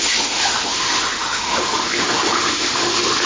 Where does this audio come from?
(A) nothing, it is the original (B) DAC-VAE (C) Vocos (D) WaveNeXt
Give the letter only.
B